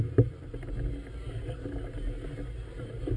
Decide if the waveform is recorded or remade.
recorded